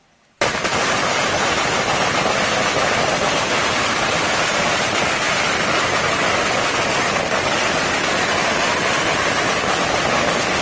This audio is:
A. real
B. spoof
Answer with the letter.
A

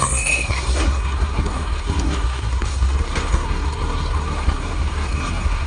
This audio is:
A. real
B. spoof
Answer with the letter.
B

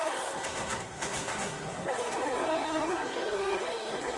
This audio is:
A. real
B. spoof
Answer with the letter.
B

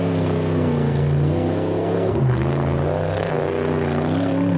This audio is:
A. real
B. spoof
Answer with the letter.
B